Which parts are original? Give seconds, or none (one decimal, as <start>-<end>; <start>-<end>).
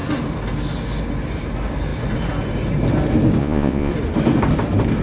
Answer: 0.0-3.4; 3.9-5.0